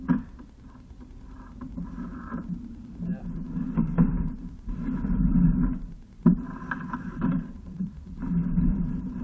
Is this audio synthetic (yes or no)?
yes